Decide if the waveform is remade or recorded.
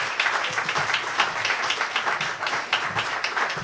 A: recorded